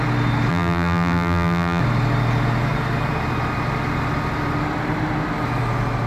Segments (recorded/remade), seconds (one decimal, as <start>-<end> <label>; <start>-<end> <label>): 0.0-0.5 recorded; 0.5-1.8 remade; 1.8-6.1 recorded